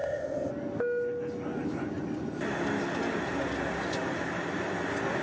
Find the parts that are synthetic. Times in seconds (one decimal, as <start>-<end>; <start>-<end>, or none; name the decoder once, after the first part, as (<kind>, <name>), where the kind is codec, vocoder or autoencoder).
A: 0.0-0.5 (codec, ZipCodec)